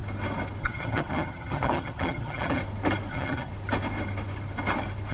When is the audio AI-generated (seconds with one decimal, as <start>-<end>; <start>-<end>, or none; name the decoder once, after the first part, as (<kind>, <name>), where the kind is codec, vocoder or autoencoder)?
0.6-2.6 (vocoder, HiFi-GAN); 3.1-3.5